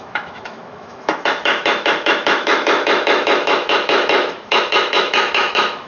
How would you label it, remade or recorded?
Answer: remade